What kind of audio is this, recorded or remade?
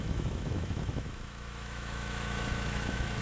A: remade